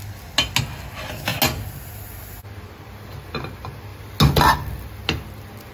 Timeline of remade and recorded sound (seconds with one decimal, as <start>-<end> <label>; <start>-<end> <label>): 0.0-5.7 recorded